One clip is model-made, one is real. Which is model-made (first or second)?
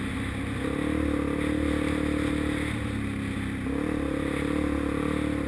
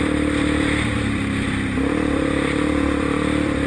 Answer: second